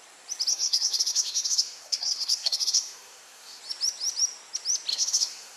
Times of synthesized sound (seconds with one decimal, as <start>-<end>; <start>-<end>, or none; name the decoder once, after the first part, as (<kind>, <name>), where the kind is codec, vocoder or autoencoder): 0.5-3.6 (codec, SNAC); 4.9-5.6